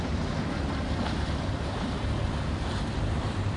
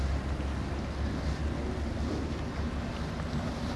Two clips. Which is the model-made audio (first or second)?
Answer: first